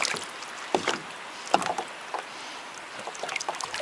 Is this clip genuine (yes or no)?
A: yes